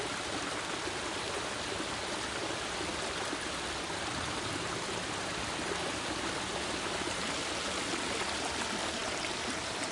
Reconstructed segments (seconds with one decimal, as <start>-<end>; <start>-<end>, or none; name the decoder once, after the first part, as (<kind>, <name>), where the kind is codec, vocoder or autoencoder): none